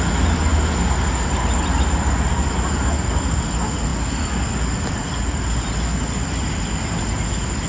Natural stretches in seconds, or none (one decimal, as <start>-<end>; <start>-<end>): 0.0-7.7